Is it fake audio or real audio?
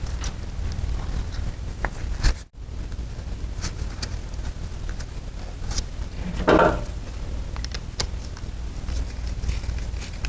real